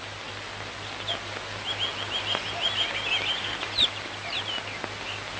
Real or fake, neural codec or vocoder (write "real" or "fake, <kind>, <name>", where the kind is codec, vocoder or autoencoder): real